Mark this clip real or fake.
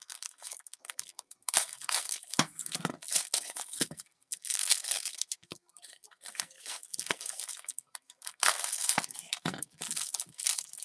fake